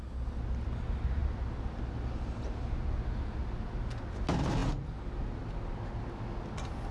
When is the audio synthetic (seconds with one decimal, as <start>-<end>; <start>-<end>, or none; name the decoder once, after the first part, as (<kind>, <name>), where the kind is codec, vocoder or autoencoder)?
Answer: none